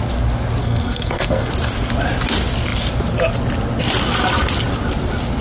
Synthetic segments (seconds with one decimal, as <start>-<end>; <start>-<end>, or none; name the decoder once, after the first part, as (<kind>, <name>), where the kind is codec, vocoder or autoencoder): 0.6-1.5 (codec, SNAC)